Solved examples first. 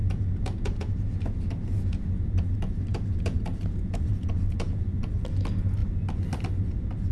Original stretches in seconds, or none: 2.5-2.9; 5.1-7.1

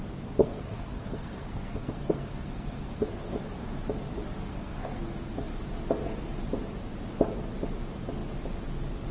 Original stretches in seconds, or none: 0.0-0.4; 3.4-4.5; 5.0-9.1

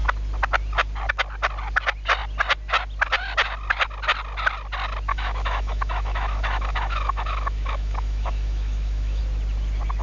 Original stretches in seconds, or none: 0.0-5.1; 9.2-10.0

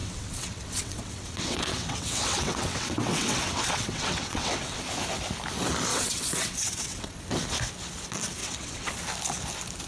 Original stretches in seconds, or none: 4.8-5.9; 7.2-8.4; 8.9-9.9